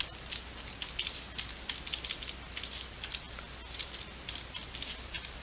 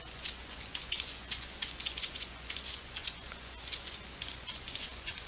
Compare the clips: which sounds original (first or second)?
first